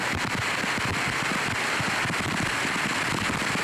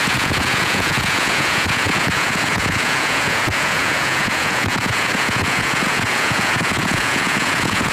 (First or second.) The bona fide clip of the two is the first